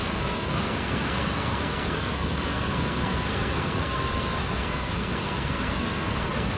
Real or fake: fake